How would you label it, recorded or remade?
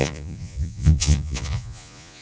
remade